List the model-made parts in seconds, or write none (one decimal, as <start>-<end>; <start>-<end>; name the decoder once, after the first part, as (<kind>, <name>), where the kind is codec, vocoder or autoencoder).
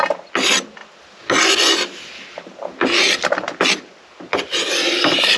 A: none